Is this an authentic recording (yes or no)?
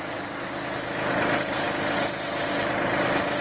yes